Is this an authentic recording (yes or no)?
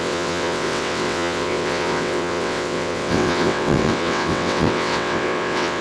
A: no